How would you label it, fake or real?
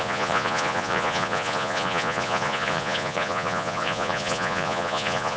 fake